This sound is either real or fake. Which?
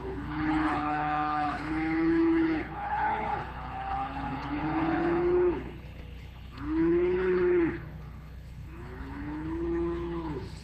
fake